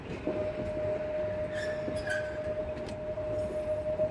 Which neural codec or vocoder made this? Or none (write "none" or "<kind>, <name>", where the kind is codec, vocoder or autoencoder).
none